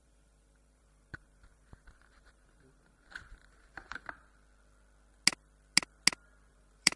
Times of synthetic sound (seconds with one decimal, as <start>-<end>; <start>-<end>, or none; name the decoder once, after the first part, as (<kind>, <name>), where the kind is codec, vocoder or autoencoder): 0.0-4.2 (vocoder, BigVGAN v2); 6.5-7.0